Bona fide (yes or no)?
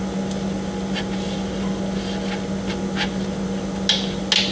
yes